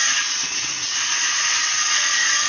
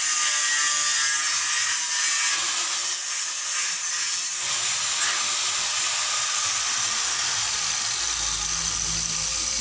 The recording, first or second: second